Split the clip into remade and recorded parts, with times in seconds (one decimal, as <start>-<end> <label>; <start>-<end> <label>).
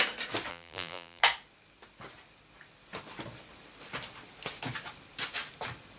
0.0-0.5 recorded; 0.5-1.2 remade; 1.2-6.0 recorded